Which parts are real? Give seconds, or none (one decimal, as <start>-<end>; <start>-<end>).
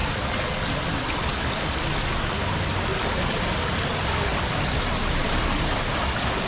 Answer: 0.0-5.2; 5.8-6.5